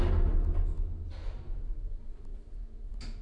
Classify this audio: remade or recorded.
recorded